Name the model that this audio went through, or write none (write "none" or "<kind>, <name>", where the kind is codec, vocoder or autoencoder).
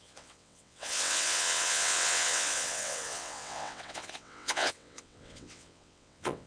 vocoder, WaveNeXt